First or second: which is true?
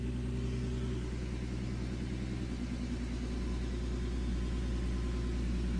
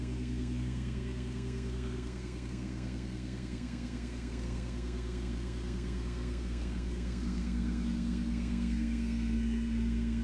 first